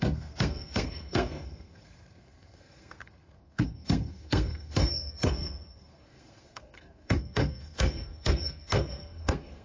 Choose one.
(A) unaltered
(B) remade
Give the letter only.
B